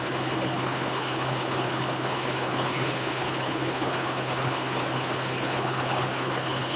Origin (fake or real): fake